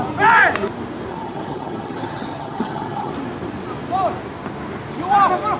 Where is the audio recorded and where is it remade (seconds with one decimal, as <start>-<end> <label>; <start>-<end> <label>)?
0.0-1.1 recorded; 1.1-3.1 remade; 3.1-5.6 recorded